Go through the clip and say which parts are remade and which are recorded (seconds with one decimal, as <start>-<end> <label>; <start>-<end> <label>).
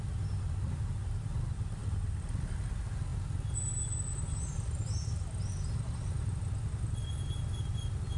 0.0-8.2 recorded